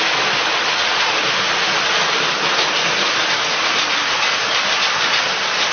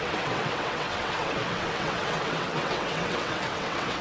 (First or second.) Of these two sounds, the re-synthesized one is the second